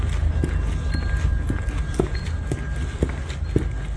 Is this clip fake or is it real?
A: real